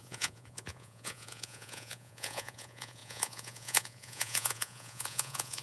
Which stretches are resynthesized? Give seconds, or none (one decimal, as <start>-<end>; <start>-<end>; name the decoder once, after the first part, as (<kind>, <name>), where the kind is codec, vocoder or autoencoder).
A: 0.0-5.6 (vocoder, Vocos)